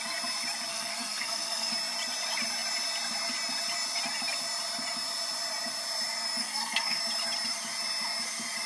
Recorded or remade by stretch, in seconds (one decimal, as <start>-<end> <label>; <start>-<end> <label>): 0.0-0.7 recorded; 0.7-1.7 remade; 1.7-6.4 recorded; 6.4-7.0 remade; 7.0-8.7 recorded